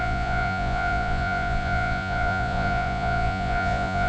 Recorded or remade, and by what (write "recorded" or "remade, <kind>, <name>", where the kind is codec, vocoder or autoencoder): remade, vocoder, Vocos